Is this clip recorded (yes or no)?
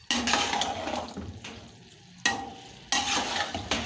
yes